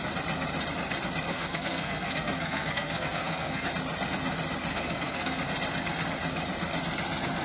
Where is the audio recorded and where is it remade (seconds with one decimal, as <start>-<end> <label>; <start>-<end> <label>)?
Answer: 0.0-1.3 recorded; 1.3-3.7 remade; 3.7-4.7 recorded; 4.7-5.4 remade; 5.4-7.4 recorded